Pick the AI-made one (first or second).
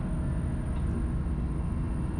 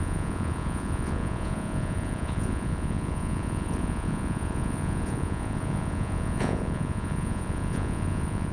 second